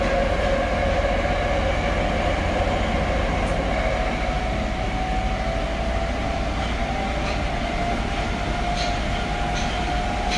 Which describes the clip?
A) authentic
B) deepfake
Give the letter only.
A